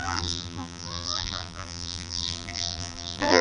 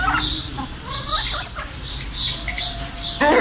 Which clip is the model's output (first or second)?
first